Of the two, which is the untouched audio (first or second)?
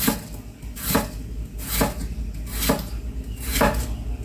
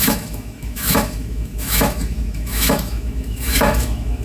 first